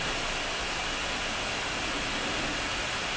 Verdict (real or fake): real